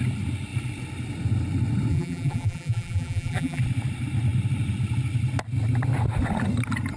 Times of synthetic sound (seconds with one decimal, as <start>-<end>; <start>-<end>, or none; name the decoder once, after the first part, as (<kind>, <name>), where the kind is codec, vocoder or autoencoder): 1.9-3.6 (vocoder, BigVGAN v2)